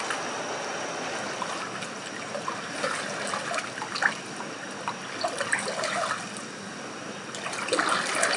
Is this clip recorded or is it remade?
recorded